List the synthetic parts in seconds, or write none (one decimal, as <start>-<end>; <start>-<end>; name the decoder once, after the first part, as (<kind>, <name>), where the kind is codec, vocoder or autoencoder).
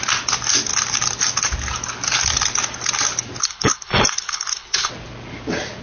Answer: 3.4-4.9 (codec, HILCodec)